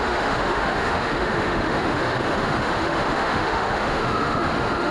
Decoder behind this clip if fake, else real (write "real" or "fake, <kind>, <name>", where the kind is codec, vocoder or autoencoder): fake, autoencoder, DAC-VAE